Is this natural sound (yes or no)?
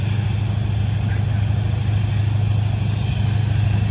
yes